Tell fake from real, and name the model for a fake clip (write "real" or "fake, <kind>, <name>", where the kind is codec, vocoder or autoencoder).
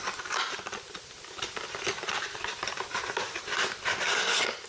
real